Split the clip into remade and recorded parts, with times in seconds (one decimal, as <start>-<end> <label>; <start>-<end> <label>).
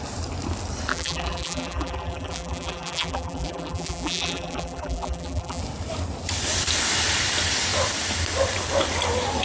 0.0-0.9 recorded; 0.9-5.6 remade; 5.6-9.4 recorded